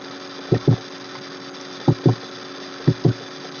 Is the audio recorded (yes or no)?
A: yes